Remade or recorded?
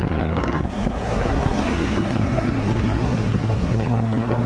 remade